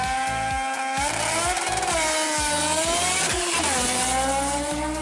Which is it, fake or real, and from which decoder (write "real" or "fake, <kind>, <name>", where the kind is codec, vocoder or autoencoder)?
real